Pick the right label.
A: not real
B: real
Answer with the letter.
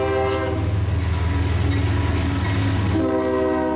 B